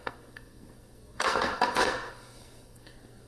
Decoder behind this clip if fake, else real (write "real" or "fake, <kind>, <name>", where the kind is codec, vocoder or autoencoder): fake, codec, SNAC